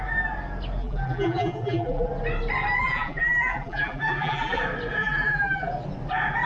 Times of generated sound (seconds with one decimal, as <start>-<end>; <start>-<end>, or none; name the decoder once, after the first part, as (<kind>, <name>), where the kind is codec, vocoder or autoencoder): 0.8-2.1 (vocoder, BigVGAN v2); 2.8-4.6; 5.0-5.7

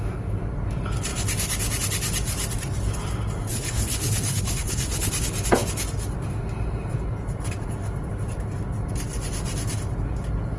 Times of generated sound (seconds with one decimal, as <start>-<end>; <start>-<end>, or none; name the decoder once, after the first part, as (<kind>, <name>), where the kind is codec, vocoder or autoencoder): 3.5-5.1 (codec, HILCodec)

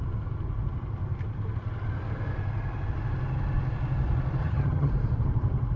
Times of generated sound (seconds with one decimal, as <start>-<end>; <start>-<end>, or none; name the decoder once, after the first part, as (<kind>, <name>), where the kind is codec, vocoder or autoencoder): 4.4-4.9 (vocoder, HiFi-GAN)